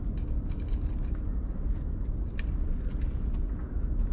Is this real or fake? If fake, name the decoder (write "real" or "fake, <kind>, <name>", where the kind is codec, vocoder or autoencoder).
real